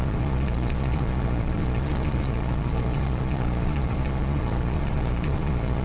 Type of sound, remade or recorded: remade